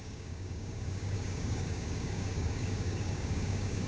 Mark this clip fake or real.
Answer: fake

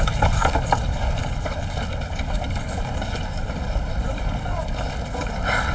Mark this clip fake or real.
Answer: fake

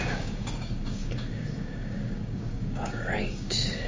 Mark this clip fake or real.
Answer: fake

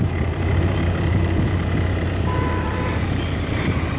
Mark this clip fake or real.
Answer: real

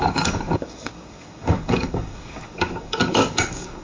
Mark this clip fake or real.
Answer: fake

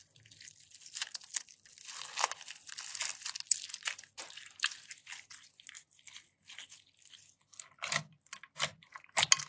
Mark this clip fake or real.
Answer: real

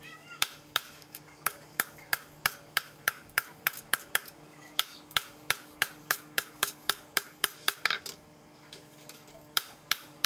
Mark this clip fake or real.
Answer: fake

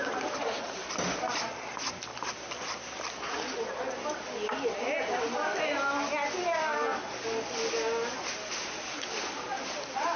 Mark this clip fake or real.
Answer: real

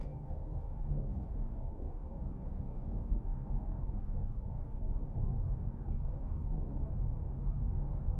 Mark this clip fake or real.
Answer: fake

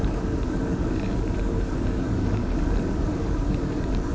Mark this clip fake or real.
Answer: fake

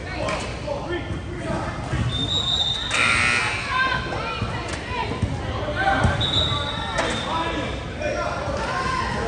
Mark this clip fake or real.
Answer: real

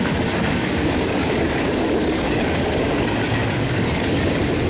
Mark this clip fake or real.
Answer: fake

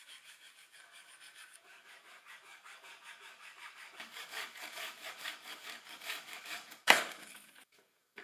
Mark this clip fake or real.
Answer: fake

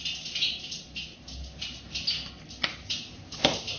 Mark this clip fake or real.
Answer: real